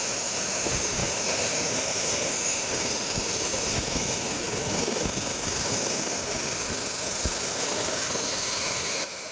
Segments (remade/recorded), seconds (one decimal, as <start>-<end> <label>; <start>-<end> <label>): 0.0-9.3 remade